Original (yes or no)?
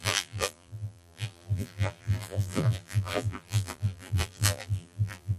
no